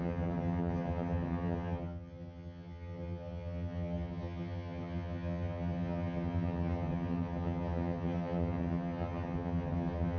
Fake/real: fake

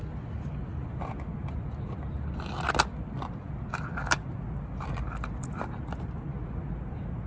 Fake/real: real